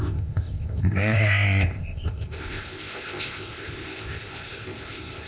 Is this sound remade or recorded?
remade